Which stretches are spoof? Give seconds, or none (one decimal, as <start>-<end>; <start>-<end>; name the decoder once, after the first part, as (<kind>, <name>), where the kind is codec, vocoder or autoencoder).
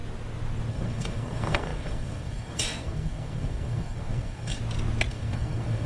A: 0.7-4.6 (codec, SNAC); 5.1-5.9